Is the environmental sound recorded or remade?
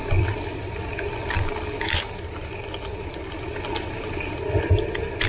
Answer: recorded